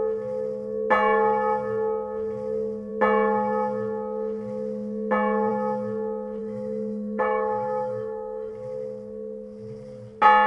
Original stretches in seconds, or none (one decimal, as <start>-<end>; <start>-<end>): 0.0-6.4; 8.5-10.5